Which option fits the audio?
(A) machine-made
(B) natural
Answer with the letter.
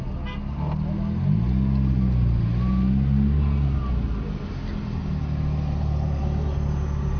B